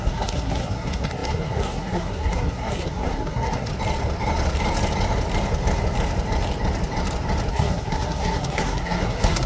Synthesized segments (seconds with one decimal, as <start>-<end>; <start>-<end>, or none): 0.0-3.7; 7.5-9.5